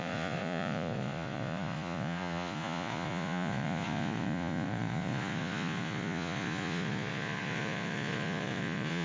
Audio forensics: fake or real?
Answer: fake